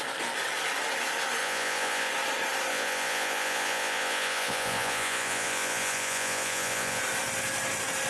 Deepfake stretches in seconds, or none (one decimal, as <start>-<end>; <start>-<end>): 1.4-2.1; 2.7-7.0